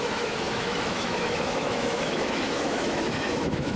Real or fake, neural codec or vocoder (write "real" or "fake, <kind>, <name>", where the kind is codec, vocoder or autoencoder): fake, autoencoder, DAC-VAE